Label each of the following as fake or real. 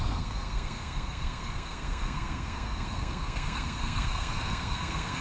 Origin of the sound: fake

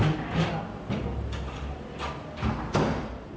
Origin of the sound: real